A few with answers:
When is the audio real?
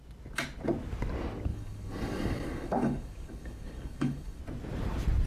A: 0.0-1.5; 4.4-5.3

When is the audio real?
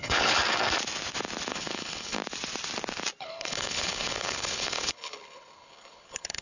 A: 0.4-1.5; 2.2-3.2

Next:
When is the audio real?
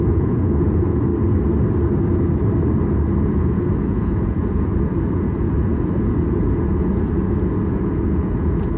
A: 1.1-3.1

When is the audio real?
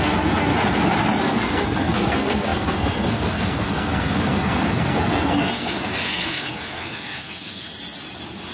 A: 0.5-1.2; 7.7-8.5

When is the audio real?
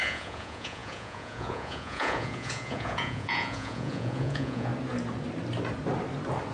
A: 4.7-6.5